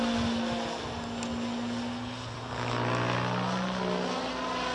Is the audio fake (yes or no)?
no